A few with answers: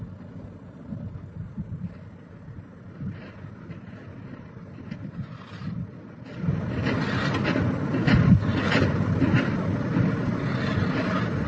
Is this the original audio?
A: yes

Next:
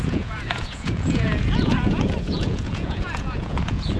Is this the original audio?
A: no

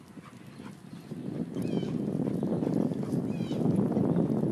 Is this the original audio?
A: yes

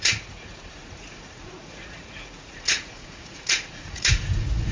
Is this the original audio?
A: no